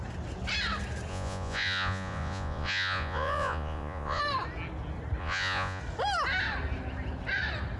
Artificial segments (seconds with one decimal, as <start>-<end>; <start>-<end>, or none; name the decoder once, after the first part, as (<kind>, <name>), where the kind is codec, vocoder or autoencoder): 1.1-4.2 (vocoder, Vocos); 5.2-5.8